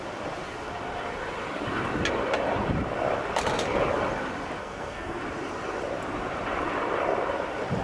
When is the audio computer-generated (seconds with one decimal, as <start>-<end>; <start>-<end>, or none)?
4.6-5.2